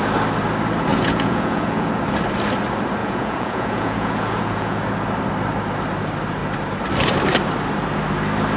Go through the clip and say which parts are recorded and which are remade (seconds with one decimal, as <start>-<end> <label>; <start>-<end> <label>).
0.0-0.9 recorded; 0.9-2.0 remade; 2.0-3.0 recorded; 3.0-4.8 remade; 4.8-8.6 recorded